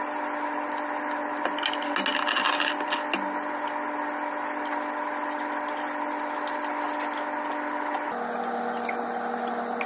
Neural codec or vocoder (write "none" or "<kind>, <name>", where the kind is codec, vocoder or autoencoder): none